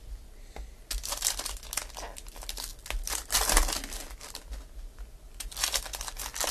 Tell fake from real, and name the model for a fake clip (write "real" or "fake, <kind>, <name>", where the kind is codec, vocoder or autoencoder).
real